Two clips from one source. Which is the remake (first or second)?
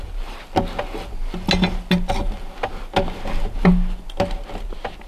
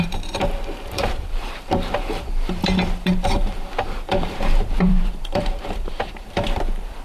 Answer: second